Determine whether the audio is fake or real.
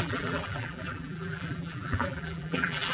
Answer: fake